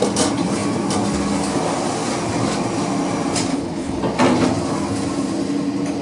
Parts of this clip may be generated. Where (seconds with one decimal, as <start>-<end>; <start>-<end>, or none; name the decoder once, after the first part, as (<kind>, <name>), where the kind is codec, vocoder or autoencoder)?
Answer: 3.5-4.0 (codec, HILCodec)